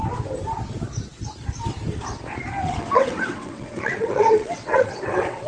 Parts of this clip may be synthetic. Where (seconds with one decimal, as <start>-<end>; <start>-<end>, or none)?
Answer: 2.6-5.5